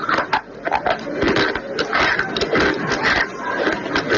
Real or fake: real